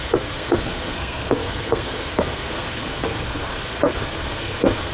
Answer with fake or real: fake